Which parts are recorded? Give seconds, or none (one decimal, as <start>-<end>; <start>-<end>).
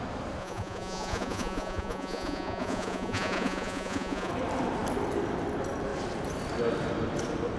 0.0-0.4; 4.3-7.6